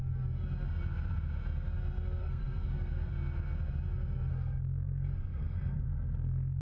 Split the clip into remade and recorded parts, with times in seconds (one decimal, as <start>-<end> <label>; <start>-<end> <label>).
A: 0.0-2.2 recorded; 2.2-3.1 remade; 3.1-4.3 recorded; 4.3-6.6 remade

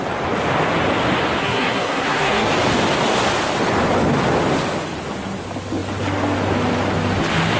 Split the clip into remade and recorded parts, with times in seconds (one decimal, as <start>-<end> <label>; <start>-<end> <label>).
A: 0.0-1.4 recorded; 1.4-2.5 remade; 2.5-7.6 recorded

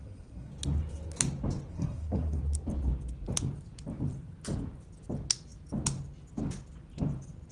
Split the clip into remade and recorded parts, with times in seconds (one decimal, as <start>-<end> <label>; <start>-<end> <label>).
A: 0.0-0.5 remade; 0.5-1.7 recorded; 1.7-2.4 remade; 2.4-7.5 recorded

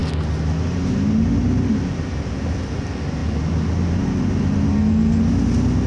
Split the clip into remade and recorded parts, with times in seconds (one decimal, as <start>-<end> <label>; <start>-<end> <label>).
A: 0.0-4.7 recorded; 4.7-5.2 remade; 5.2-5.9 recorded

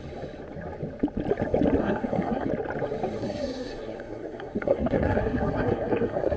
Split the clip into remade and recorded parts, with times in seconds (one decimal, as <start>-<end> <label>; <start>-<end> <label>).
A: 0.0-1.8 recorded; 1.8-2.5 remade; 2.5-3.2 recorded; 3.2-6.4 remade